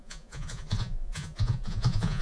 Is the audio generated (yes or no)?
yes